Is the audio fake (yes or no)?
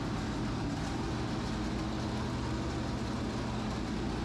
no